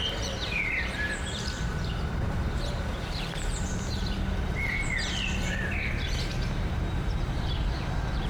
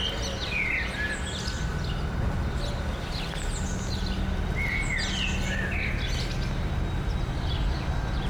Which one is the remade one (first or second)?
first